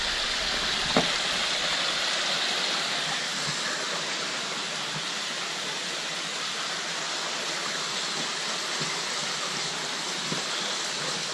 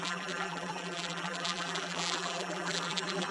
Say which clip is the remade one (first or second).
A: second